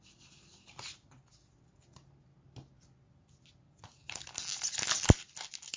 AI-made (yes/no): no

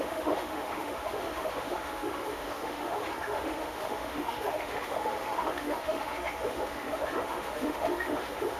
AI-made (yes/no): yes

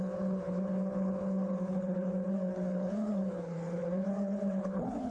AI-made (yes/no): yes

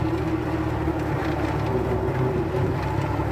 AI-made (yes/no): no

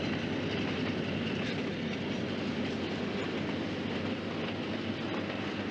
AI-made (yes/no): no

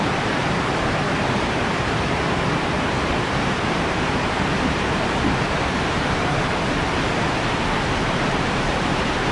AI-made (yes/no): yes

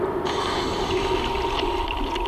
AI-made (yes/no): no